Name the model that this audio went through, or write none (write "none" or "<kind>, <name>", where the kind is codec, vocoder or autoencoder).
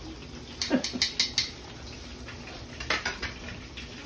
none